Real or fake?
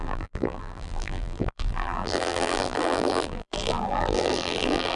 fake